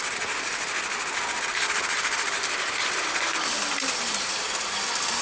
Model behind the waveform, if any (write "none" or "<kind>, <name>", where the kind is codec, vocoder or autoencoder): none